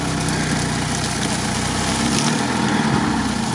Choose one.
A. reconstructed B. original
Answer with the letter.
B